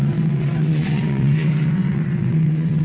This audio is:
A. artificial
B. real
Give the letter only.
A